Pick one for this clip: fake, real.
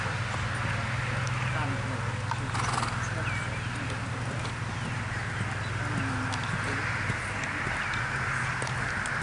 real